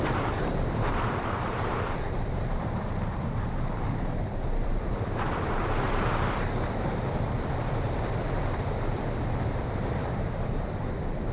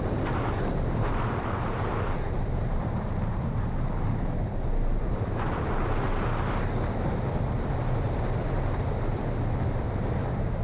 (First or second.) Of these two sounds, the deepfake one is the first